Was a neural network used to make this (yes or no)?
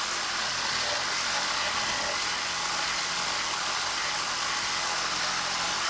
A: no